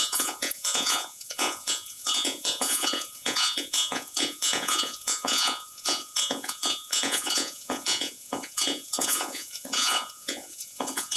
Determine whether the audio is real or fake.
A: fake